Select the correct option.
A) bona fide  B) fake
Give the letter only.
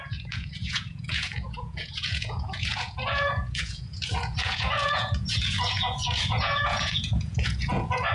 B